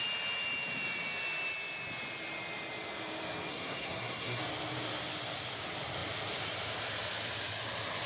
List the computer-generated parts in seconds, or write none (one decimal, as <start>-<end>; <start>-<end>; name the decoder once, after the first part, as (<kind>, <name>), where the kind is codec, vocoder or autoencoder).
3.5-4.4 (codec, SNAC)

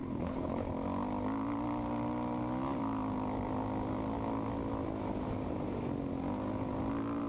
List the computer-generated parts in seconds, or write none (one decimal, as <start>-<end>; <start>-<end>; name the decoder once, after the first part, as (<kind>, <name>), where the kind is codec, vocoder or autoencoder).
0.0-0.7 (codec, HILCodec)

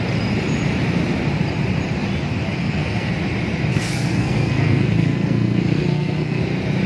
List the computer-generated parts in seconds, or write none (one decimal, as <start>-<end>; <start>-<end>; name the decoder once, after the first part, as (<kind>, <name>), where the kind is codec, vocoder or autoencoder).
2.6-3.1 (codec, SNAC); 3.7-6.4

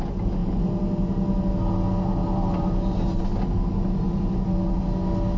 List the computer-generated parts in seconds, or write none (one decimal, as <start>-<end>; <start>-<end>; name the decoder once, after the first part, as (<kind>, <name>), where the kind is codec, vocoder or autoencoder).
2.2-3.2 (vocoder, BigVGAN v2)

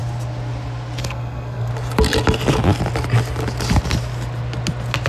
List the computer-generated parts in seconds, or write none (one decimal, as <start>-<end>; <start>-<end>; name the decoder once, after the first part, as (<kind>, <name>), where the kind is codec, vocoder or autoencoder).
1.0-1.7 (codec, SNAC)